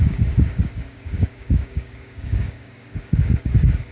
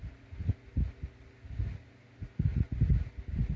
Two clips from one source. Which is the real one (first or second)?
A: second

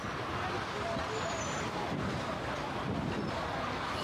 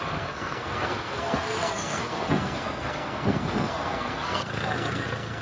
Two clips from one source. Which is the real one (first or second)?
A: first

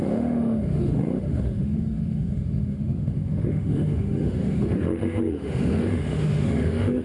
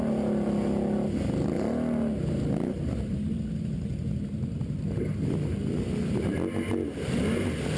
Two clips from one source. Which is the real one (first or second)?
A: second